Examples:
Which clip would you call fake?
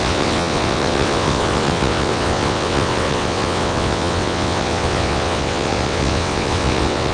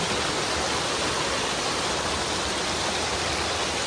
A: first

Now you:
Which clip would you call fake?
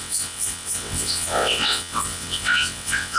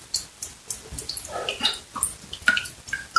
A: first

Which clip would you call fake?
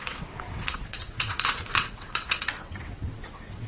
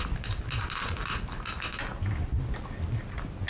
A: first